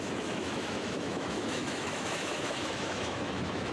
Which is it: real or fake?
fake